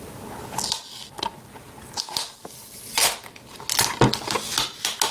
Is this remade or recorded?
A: recorded